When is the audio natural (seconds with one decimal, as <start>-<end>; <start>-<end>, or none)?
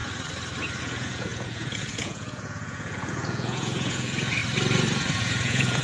0.0-0.8; 4.4-5.2